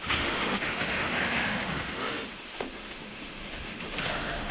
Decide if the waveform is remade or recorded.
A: remade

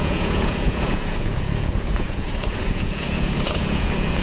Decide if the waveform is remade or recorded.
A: remade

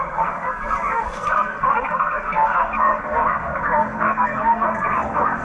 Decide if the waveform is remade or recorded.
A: remade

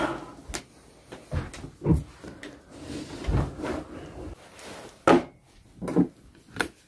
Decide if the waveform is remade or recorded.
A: recorded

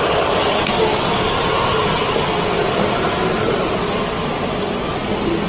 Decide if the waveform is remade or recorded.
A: recorded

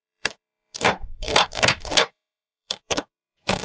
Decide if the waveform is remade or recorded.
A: remade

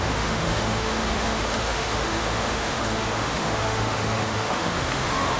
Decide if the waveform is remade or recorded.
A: remade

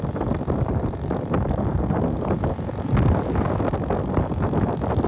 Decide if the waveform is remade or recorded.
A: recorded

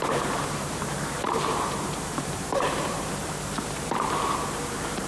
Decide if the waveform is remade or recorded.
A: remade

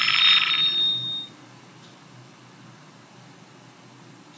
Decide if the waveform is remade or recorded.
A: recorded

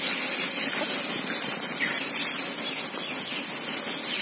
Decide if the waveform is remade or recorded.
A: recorded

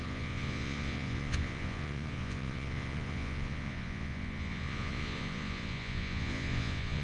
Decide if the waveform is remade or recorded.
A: remade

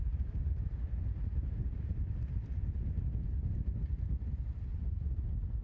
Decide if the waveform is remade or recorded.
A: recorded